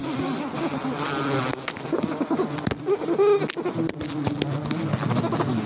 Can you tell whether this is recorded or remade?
recorded